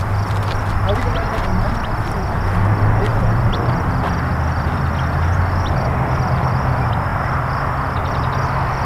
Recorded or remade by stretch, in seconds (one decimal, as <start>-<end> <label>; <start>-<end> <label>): 0.0-3.1 recorded; 3.1-3.6 remade; 3.6-7.1 recorded; 7.1-7.6 remade; 7.6-8.8 recorded